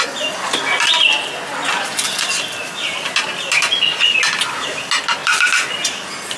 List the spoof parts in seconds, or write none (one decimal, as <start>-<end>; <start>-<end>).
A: none